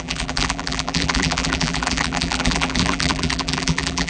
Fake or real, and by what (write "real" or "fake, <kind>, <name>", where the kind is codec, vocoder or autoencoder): fake, vocoder, BigVGAN v2